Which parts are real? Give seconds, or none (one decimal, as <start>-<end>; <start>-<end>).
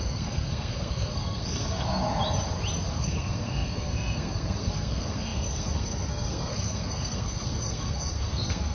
1.9-2.9